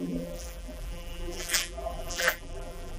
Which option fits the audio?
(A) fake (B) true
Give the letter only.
A